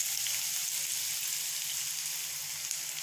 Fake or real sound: real